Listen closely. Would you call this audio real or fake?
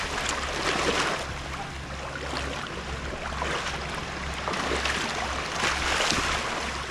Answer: real